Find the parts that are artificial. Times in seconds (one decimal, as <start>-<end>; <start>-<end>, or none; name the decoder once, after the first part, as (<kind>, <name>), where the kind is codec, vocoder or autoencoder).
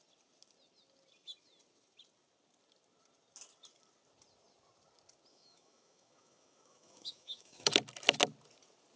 5.3-7.7 (autoencoder, DAC-VAE)